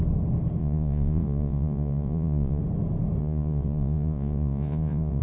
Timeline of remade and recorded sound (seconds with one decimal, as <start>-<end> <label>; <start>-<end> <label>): 0.0-0.6 recorded; 0.6-2.6 remade; 2.6-3.2 recorded; 3.2-5.2 remade